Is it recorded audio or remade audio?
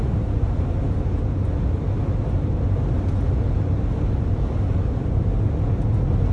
recorded